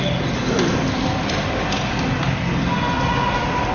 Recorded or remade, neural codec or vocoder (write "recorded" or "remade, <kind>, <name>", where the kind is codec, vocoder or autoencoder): remade, vocoder, BigVGAN v2